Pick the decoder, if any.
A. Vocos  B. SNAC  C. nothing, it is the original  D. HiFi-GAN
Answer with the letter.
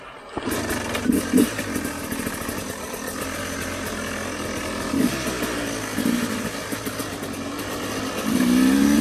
C